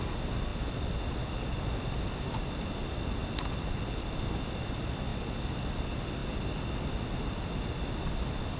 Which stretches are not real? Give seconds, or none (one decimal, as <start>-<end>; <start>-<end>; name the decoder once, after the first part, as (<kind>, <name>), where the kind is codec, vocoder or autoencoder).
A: none